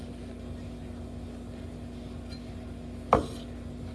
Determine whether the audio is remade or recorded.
recorded